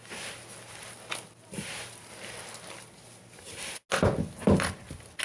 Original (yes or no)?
yes